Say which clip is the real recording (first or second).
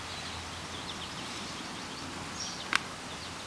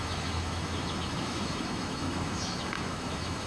first